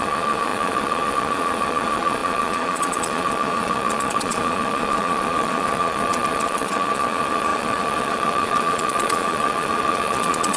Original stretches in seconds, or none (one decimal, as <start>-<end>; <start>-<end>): none